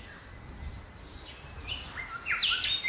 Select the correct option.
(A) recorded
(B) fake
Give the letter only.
A